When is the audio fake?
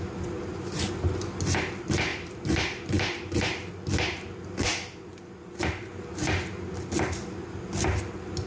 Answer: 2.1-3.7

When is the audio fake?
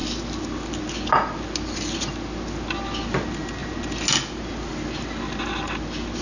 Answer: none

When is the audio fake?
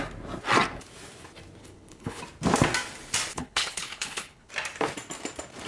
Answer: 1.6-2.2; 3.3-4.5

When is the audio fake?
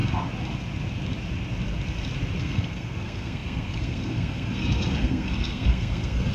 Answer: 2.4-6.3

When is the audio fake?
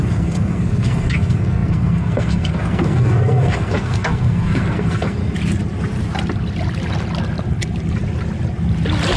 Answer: 0.0-5.2